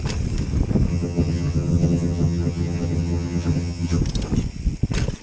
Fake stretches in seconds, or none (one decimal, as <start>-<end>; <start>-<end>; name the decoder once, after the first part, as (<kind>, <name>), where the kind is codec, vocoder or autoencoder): 0.9-4.0 (vocoder, HiFi-GAN)